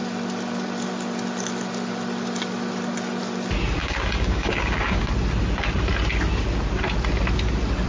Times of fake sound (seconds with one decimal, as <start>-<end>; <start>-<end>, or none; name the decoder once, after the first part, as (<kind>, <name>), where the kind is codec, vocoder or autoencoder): 3.8-5.1 (codec, DAC)